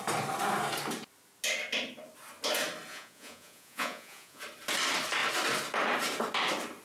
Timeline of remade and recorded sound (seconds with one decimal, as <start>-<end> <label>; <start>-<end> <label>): 0.0-2.9 recorded; 2.9-4.4 remade; 4.4-6.8 recorded